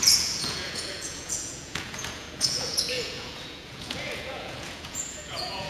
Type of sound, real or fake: fake